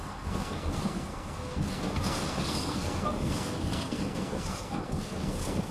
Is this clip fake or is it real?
fake